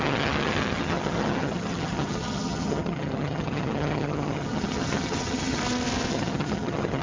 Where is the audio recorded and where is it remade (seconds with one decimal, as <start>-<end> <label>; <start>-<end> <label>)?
0.0-5.6 remade; 5.6-6.1 recorded; 6.1-7.0 remade